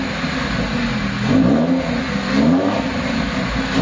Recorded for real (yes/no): yes